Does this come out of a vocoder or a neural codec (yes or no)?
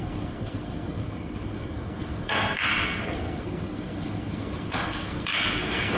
yes